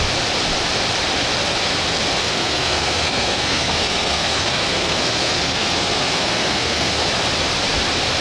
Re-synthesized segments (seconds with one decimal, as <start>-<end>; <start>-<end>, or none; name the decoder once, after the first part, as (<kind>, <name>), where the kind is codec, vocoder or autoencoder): 2.2-7.1 (codec, SNAC)